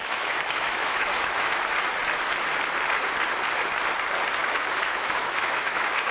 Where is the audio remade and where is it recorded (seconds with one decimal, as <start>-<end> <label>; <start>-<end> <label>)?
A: 0.0-1.6 remade; 1.6-4.4 recorded; 4.4-6.1 remade